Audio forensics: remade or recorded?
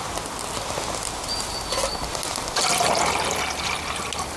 recorded